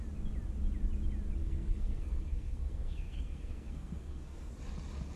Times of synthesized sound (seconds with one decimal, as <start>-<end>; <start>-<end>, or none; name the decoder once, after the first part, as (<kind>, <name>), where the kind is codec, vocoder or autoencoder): 1.4-4.5 (codec, SNAC)